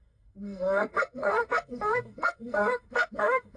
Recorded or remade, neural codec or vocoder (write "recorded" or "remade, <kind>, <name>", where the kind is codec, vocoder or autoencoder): remade, codec, SNAC